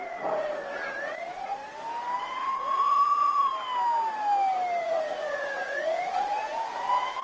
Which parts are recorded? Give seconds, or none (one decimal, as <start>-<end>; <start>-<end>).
1.6-2.2; 3.5-4.8